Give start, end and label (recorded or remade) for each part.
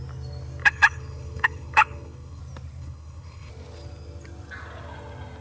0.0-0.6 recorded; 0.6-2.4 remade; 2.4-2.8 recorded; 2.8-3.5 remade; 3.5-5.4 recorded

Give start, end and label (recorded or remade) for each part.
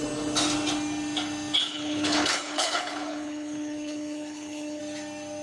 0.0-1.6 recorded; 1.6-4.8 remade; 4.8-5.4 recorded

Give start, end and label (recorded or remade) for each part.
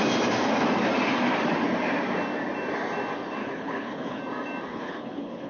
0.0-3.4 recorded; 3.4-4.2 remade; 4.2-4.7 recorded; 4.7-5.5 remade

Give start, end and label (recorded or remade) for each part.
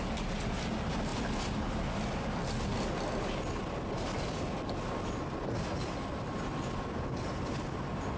0.0-8.2 recorded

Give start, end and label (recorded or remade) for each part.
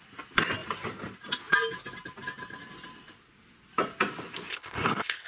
0.0-4.5 recorded; 4.5-5.3 remade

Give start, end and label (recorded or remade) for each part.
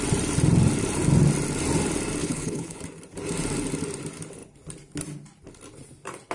0.0-2.2 recorded; 2.2-2.8 remade; 2.8-6.3 recorded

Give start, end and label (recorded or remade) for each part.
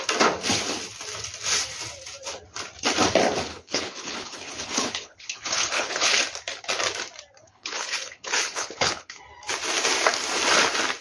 0.0-3.5 recorded; 3.5-6.2 remade; 6.2-7.4 recorded; 7.4-9.2 remade; 9.2-11.0 recorded